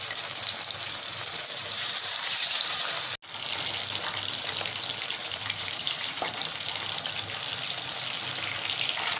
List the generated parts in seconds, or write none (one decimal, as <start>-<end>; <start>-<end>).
1.2-2.8; 5.2-6.5